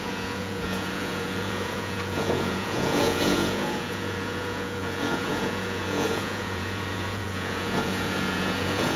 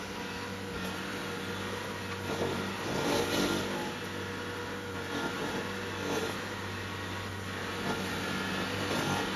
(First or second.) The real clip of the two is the second